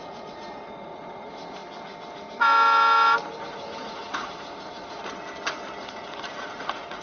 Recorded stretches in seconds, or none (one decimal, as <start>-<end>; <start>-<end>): 1.6-3.4; 5.0-5.8